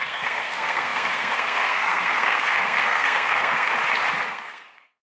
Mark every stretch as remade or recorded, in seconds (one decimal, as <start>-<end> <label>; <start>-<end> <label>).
0.0-3.7 remade; 3.7-4.3 recorded; 4.3-5.1 remade

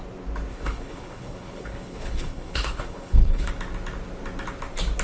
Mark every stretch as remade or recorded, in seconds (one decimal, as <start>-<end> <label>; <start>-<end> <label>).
0.0-0.5 recorded; 0.5-3.5 remade; 3.5-5.0 recorded

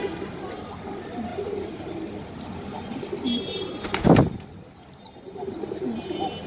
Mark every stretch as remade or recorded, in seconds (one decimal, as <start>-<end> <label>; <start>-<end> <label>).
0.0-6.5 recorded

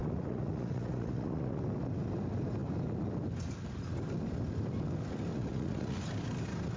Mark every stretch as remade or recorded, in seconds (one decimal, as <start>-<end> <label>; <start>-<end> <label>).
0.0-1.6 remade; 1.6-5.3 recorded; 5.3-6.0 remade; 6.0-6.8 recorded

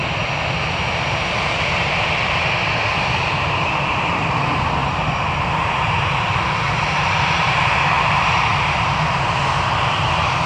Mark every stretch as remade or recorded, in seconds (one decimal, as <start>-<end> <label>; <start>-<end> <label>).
0.0-3.3 recorded; 3.3-10.5 remade

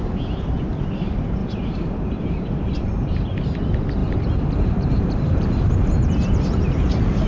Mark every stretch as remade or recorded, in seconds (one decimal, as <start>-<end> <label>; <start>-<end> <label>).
0.0-1.4 recorded; 1.4-3.4 remade; 3.4-4.0 recorded; 4.0-6.1 remade; 6.1-7.3 recorded

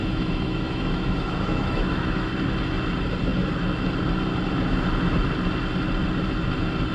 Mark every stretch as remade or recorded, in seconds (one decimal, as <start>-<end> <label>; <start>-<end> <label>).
0.0-2.3 remade; 2.3-6.9 recorded